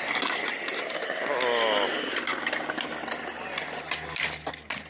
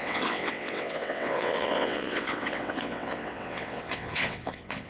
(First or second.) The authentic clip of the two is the first